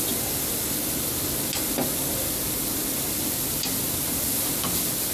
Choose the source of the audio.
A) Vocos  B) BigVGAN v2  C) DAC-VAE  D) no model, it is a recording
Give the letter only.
D